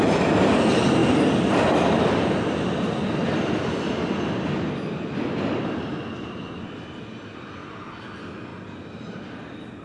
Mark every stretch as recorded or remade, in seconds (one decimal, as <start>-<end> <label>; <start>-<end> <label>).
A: 0.0-9.8 recorded